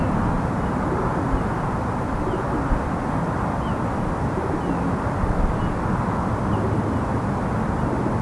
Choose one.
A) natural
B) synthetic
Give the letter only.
A